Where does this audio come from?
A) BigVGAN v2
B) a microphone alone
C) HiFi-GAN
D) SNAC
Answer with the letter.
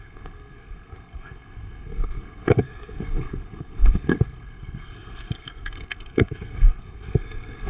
D